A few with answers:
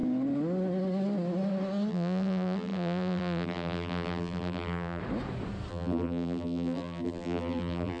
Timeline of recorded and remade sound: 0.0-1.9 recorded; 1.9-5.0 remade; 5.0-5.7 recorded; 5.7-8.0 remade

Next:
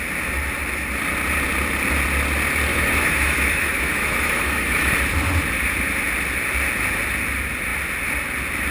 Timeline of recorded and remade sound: 0.0-2.7 recorded; 2.7-4.9 remade; 4.9-8.7 recorded

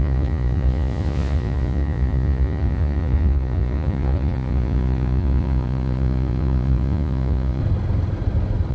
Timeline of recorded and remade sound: 0.0-7.6 remade; 7.6-8.7 recorded

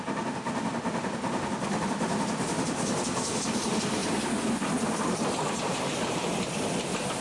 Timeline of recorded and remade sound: 0.0-7.2 recorded

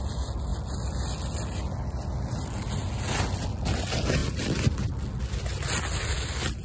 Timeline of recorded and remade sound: 0.0-6.6 recorded

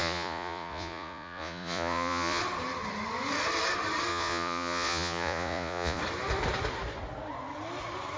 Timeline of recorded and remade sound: 0.0-2.4 remade; 2.4-4.1 recorded; 4.1-6.0 remade; 6.0-8.2 recorded